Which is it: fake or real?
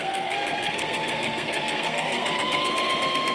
fake